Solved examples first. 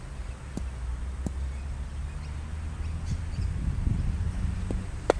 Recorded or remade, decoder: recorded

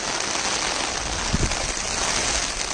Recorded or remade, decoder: recorded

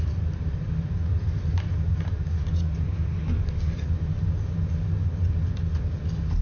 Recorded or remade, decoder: recorded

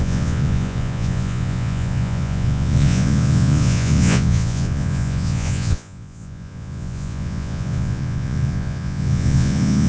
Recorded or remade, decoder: remade, vocoder, Vocos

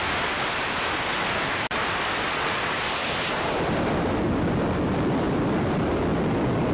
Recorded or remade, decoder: recorded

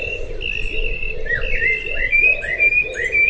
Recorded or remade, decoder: recorded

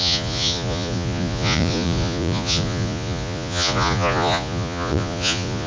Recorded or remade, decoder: remade, vocoder, Vocos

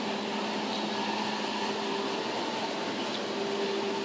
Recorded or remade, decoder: recorded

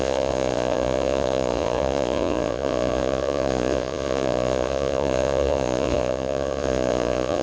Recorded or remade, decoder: remade, vocoder, Vocos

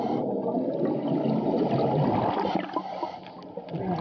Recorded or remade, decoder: recorded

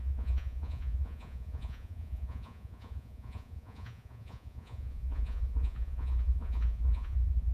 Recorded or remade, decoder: remade, vocoder, Vocos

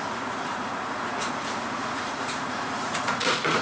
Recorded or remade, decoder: remade, vocoder, Vocos